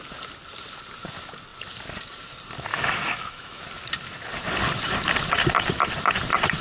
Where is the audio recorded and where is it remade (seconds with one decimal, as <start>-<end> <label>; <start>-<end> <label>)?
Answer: 0.0-2.7 recorded; 2.7-3.6 remade; 3.6-6.6 recorded